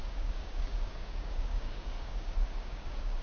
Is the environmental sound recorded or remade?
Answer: remade